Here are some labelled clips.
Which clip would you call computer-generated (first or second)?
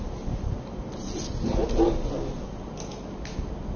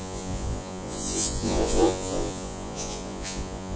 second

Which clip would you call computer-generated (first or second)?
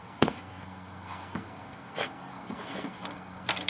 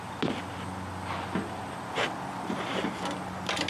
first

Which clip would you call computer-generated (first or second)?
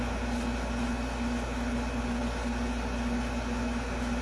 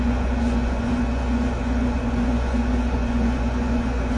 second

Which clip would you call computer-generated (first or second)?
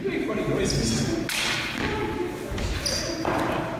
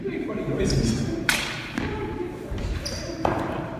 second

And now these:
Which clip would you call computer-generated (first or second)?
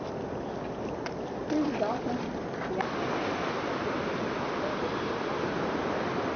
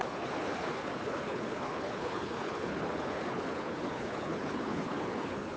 second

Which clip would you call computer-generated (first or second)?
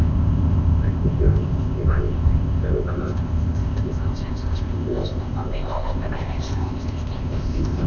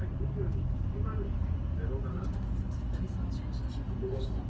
first